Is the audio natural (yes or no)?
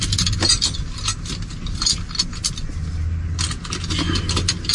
yes